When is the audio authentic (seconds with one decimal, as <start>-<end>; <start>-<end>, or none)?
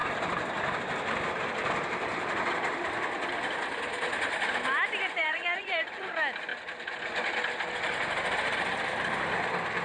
0.0-5.2; 6.1-9.8